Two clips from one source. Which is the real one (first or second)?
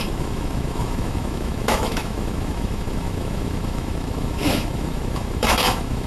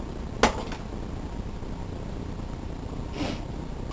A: second